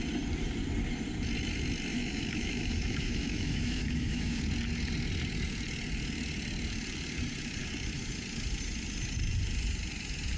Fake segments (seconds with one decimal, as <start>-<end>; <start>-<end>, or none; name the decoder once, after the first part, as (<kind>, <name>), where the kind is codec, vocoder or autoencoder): 1.9-4.4 (autoencoder, DAC-VAE)